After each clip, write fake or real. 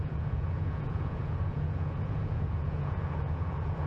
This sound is fake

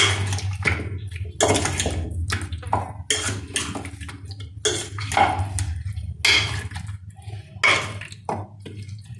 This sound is real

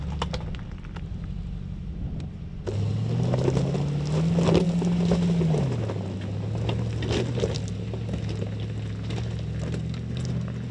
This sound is real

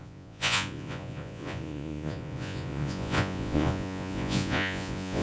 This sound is fake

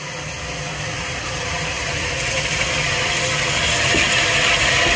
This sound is real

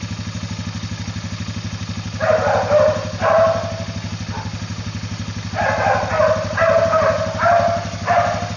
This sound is real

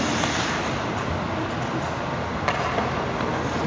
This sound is real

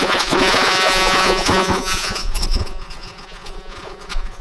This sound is fake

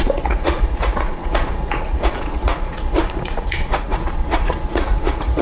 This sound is fake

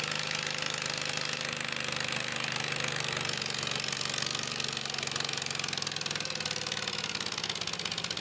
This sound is real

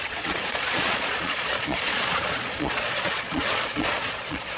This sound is fake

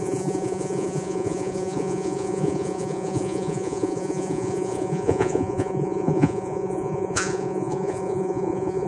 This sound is fake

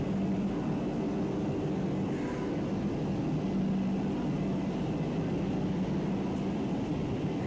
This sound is real